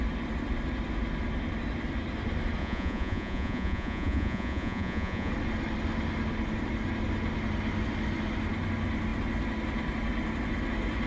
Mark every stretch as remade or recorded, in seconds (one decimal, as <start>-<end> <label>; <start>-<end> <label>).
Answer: 0.0-2.6 recorded; 2.6-5.3 remade; 5.3-11.1 recorded